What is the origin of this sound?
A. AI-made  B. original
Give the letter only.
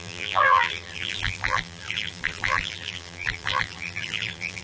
A